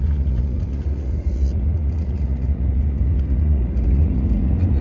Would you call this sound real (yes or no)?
no